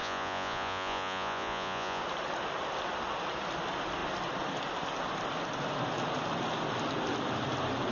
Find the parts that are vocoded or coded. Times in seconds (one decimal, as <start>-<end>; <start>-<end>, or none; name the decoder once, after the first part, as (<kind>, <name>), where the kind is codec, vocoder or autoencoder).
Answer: 0.0-2.0 (vocoder, Vocos)